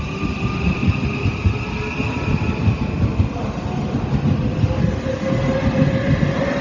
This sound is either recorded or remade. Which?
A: recorded